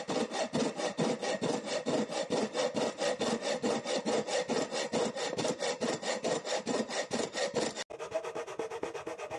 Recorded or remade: recorded